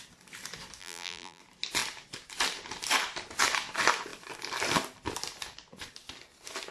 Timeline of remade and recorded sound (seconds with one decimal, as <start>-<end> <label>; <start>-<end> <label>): 0.0-0.8 recorded; 0.8-1.4 remade; 1.4-6.7 recorded